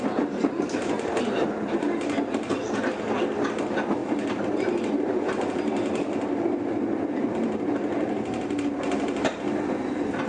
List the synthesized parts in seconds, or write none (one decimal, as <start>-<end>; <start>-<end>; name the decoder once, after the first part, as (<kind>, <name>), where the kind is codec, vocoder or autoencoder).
none